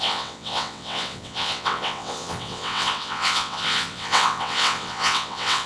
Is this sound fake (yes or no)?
yes